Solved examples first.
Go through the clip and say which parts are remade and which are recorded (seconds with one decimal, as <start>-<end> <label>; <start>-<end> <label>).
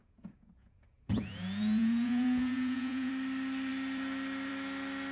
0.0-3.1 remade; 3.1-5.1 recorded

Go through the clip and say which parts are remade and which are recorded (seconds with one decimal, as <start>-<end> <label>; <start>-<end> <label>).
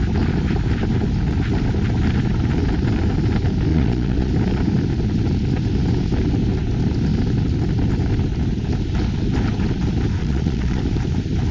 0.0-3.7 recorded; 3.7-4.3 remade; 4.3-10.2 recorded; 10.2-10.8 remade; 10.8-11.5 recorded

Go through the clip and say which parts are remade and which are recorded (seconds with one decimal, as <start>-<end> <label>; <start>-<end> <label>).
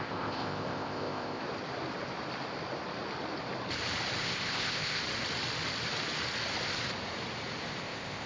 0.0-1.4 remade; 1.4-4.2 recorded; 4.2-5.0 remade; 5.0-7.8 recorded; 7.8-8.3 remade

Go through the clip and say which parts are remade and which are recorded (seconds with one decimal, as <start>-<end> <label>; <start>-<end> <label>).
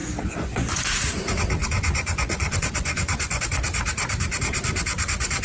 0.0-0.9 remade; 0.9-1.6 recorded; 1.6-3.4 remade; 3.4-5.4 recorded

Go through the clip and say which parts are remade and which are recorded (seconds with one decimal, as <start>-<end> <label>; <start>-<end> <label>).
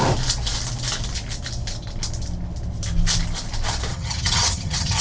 0.0-3.9 recorded; 3.9-5.0 remade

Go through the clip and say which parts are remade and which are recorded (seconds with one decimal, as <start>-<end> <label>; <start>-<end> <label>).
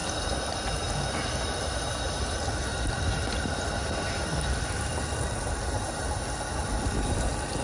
0.0-7.6 recorded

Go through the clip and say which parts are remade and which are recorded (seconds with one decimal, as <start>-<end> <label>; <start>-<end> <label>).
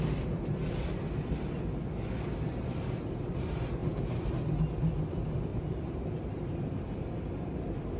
0.0-3.8 recorded; 3.8-4.6 remade; 4.6-5.5 recorded; 5.5-7.1 remade; 7.1-8.0 recorded